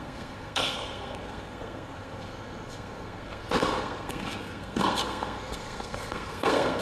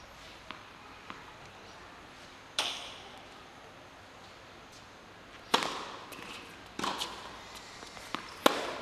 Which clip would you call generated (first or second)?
first